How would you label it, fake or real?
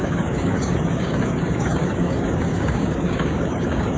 fake